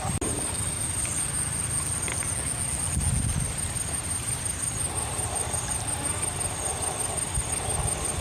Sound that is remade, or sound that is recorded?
recorded